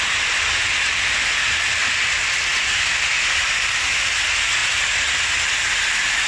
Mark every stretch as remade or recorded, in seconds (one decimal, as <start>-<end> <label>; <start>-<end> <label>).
0.0-6.3 recorded